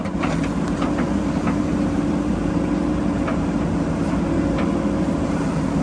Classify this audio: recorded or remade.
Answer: remade